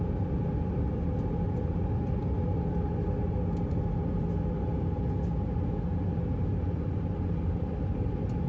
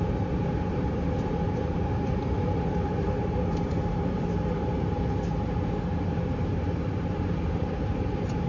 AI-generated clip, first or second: second